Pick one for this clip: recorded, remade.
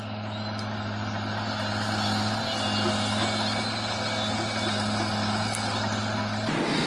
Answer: recorded